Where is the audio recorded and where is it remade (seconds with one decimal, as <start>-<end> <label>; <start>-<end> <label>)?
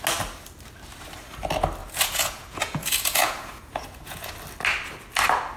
0.0-1.8 recorded; 1.8-4.3 remade; 4.3-5.6 recorded